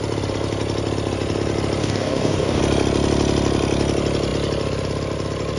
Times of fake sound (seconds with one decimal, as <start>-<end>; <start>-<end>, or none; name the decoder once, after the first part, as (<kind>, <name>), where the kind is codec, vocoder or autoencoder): 1.8-2.6 (codec, DAC)